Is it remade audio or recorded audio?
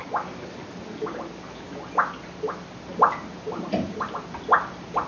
recorded